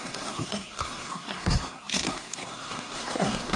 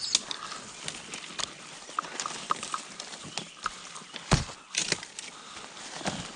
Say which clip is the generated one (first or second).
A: first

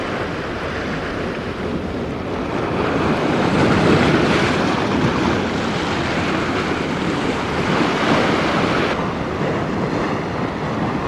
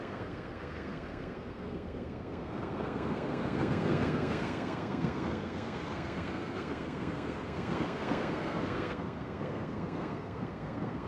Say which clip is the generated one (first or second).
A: second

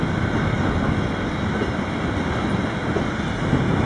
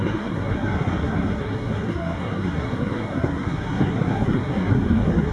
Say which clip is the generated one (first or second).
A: second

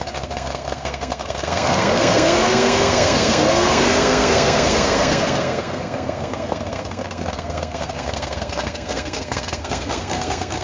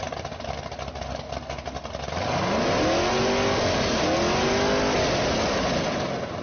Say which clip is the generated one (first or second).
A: first